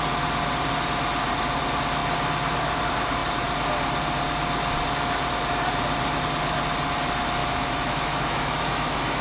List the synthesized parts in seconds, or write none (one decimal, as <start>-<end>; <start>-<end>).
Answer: 7.4-9.2